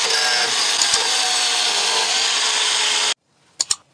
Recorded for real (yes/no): yes